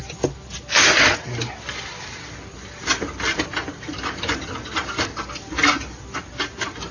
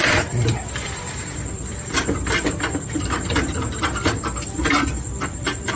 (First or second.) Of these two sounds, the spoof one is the second